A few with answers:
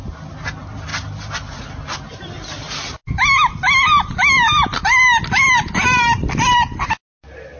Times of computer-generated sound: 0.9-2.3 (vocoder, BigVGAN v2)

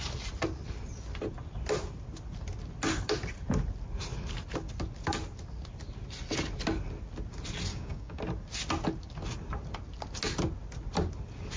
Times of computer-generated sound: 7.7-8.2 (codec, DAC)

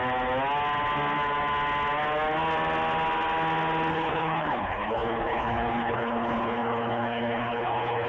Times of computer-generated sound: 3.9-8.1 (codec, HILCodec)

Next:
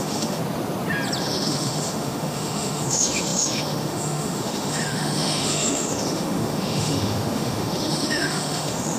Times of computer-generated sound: 0.0-0.4 (autoencoder, DAC-VAE); 1.2-9.0